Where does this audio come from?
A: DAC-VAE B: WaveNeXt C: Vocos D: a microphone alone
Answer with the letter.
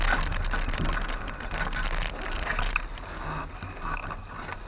D